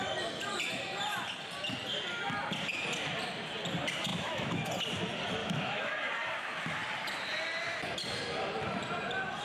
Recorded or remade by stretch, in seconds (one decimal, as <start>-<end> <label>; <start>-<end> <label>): 0.0-4.1 recorded; 4.1-4.7 remade; 4.7-5.4 recorded; 5.4-6.1 remade; 6.1-9.4 recorded